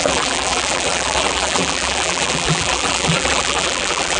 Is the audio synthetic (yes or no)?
yes